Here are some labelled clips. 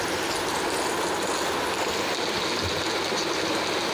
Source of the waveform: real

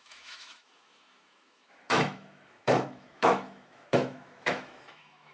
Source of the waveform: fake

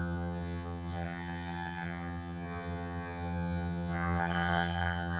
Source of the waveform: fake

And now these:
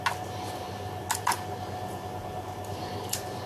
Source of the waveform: real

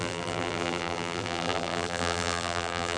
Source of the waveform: fake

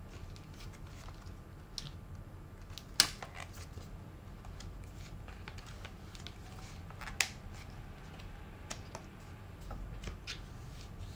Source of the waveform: real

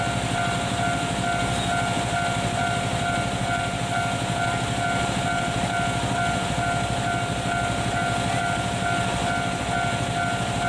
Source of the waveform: real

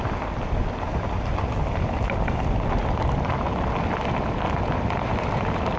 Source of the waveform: fake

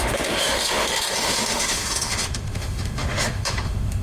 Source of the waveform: fake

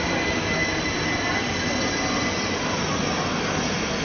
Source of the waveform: real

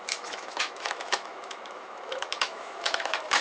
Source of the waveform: fake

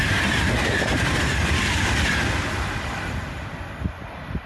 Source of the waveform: real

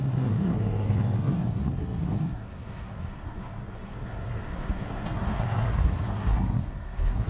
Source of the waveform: fake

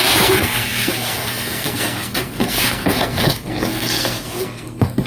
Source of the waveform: fake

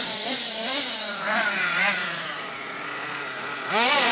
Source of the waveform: fake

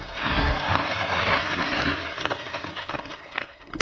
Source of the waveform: fake